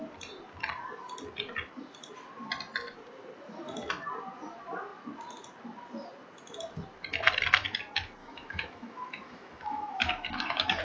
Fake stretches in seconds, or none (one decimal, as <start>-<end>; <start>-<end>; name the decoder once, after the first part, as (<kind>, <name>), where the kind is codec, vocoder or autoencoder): 8.2-10.8 (autoencoder, DAC-VAE)